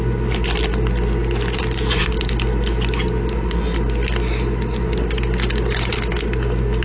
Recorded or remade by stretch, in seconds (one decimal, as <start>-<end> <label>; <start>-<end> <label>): 0.0-6.8 recorded